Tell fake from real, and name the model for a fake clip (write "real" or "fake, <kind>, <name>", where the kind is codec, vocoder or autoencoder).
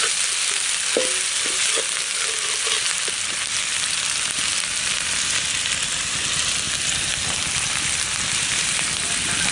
real